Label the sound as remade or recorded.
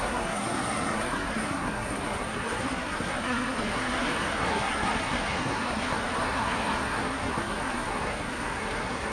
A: remade